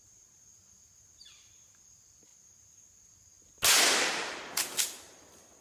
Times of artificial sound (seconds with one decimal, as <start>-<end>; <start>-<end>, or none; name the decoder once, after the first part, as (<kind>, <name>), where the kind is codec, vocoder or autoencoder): none